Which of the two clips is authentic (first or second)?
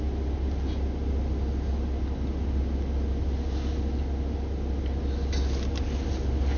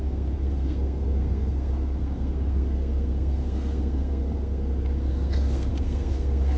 first